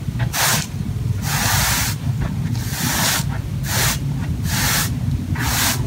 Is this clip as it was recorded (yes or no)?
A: yes